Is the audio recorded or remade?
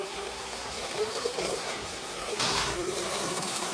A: remade